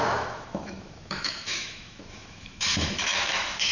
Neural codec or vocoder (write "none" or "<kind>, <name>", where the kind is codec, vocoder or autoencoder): autoencoder, DAC-VAE